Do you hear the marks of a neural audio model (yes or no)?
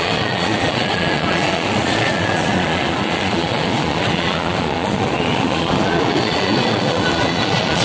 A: yes